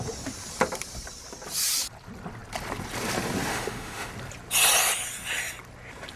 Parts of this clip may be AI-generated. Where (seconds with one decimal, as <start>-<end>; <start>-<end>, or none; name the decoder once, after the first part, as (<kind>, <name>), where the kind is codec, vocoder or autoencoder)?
3.5-4.1 (autoencoder, DAC-VAE)